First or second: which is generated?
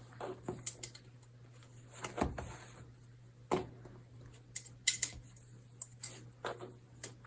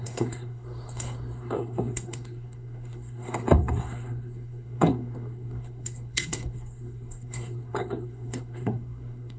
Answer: second